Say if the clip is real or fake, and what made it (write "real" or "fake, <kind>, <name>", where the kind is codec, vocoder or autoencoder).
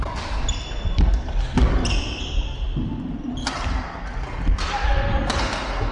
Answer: real